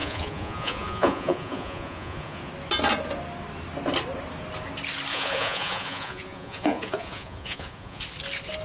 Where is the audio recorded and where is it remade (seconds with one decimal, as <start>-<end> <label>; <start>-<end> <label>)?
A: 0.0-2.5 remade; 2.5-5.1 recorded; 5.1-8.0 remade; 8.0-8.6 recorded